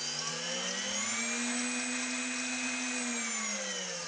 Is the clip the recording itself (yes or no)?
yes